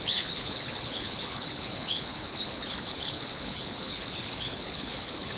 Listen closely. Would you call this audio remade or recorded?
remade